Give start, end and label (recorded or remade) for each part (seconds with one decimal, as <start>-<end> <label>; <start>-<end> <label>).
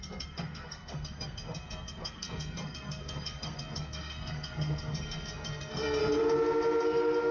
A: 0.0-6.0 remade; 6.0-7.3 recorded